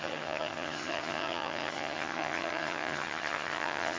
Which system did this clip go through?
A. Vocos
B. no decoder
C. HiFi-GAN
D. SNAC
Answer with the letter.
C